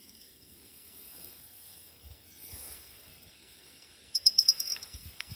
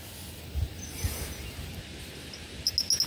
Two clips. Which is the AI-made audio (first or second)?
first